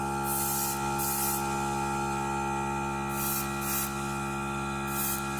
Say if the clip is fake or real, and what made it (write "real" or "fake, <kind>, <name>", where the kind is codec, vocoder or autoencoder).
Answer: real